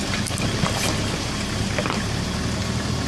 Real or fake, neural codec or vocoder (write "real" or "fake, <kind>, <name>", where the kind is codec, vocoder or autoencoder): real